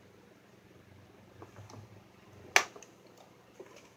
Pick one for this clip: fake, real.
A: real